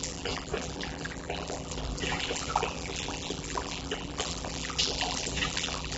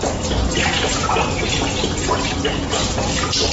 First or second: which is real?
second